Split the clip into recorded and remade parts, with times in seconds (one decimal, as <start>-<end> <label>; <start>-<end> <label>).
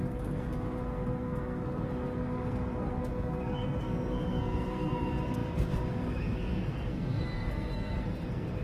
0.0-8.6 remade